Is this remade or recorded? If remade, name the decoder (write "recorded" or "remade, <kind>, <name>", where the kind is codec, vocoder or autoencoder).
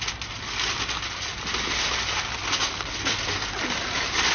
recorded